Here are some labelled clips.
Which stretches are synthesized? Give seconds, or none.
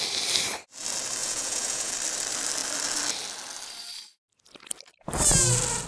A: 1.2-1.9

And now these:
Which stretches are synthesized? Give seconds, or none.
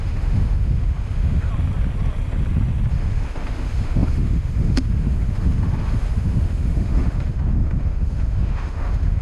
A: 0.0-1.5; 2.9-9.2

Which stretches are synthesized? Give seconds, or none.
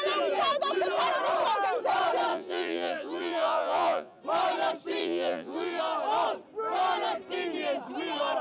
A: 2.3-4.2; 5.0-5.8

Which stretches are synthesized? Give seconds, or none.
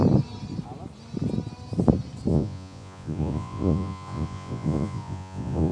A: 2.3-5.7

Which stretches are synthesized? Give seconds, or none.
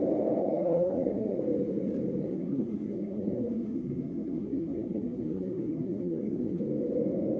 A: 0.4-1.4; 2.2-6.6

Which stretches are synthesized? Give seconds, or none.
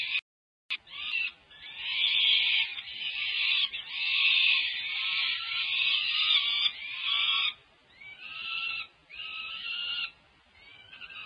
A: none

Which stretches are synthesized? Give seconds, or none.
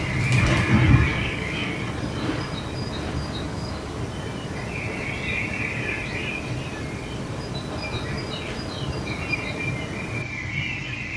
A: 1.1-1.7; 3.5-4.0